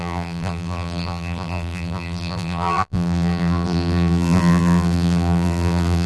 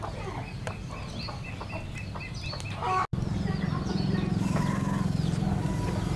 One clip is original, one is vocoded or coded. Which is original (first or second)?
second